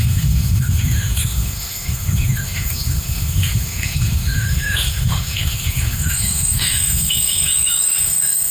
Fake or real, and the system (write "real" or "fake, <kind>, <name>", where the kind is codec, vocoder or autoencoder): fake, autoencoder, DAC-VAE